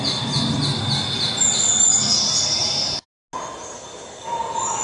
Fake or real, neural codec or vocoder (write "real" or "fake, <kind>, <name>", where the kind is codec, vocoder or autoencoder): real